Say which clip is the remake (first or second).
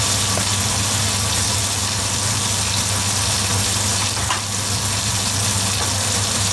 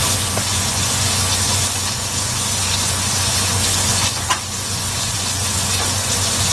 second